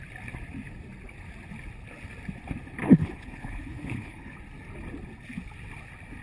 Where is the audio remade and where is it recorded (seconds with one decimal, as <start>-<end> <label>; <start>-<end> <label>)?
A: 0.0-2.8 recorded; 2.8-4.4 remade; 4.4-6.2 recorded